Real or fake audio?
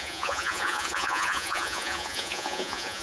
fake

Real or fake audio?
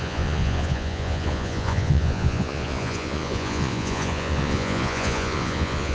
fake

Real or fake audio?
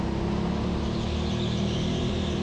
real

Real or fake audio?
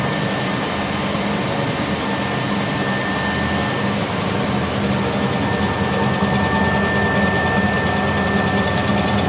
real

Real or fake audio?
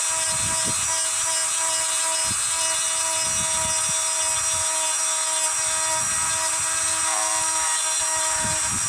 real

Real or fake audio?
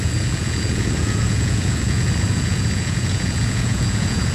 fake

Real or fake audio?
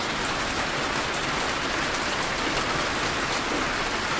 real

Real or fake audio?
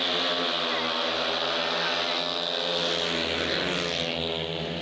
real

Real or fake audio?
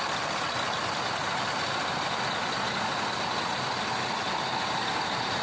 real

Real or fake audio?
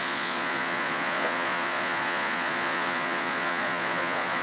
fake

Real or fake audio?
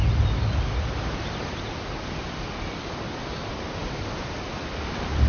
real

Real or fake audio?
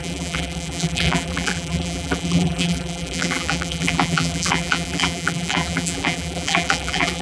fake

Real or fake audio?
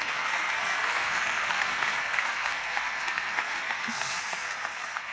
fake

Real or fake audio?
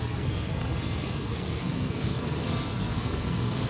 fake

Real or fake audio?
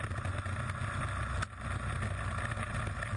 real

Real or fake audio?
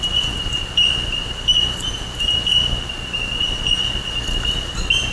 real